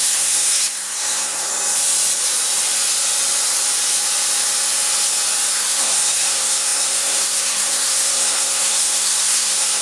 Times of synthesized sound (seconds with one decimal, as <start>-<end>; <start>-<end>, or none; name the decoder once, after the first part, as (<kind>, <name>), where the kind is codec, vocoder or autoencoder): 0.0-1.5 (codec, SNAC); 5.5-9.8